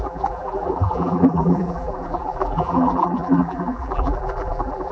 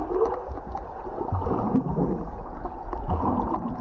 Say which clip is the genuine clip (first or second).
second